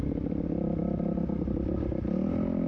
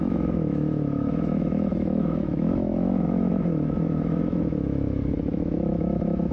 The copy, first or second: second